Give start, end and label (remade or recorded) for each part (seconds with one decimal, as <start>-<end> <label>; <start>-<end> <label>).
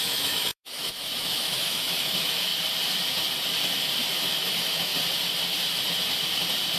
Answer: 0.0-2.5 remade; 2.5-4.2 recorded; 4.2-4.9 remade; 4.9-6.8 recorded